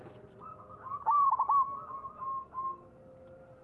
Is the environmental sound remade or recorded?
recorded